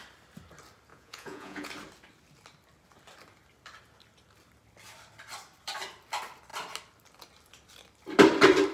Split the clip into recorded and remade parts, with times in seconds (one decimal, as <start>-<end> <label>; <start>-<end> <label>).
0.0-0.9 recorded; 0.9-1.7 remade; 1.7-8.7 recorded